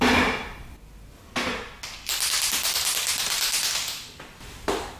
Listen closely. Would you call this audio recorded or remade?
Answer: recorded